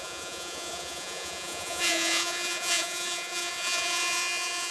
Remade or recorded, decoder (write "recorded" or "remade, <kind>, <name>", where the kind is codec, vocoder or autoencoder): remade, vocoder, Vocos